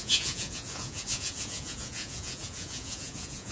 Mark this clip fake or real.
fake